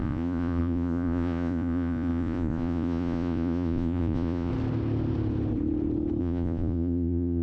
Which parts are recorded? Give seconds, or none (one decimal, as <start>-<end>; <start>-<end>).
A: 4.5-6.2